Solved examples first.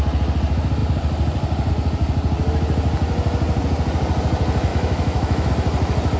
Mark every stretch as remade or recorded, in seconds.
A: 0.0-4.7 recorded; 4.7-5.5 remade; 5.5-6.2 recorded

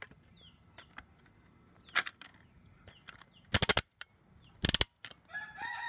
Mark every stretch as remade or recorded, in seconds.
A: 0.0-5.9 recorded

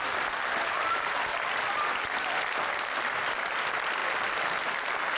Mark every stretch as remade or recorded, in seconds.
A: 0.0-4.0 remade; 4.0-5.2 recorded

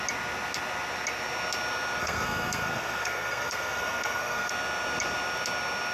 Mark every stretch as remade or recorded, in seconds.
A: 0.0-2.0 recorded; 2.0-4.5 remade; 4.5-5.9 recorded

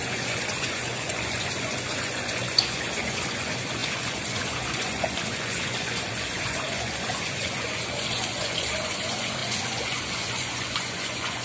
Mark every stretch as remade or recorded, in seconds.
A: 0.0-11.4 remade

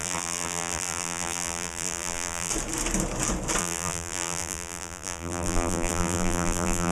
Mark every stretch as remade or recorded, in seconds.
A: 0.0-2.5 remade; 2.5-3.6 recorded; 3.6-6.9 remade

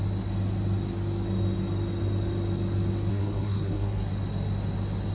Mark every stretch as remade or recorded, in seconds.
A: 0.0-3.1 recorded; 3.1-4.1 remade; 4.1-5.1 recorded

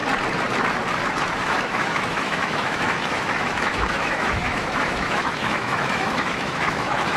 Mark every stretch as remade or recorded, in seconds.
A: 0.0-1.4 recorded; 1.4-7.2 remade